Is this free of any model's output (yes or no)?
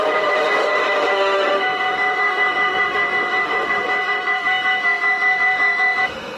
no